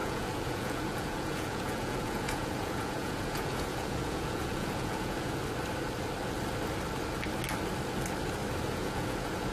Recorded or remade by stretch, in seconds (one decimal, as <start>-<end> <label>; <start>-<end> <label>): 0.0-5.4 remade; 5.4-8.7 recorded; 8.7-9.5 remade